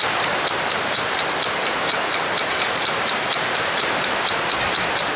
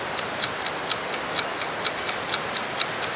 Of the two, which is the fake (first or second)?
first